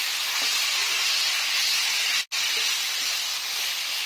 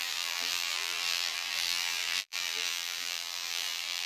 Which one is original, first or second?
first